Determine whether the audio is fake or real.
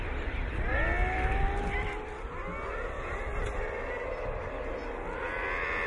real